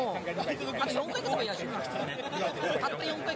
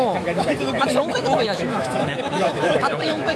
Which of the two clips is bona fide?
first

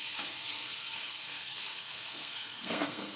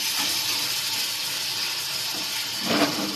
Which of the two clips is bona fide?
second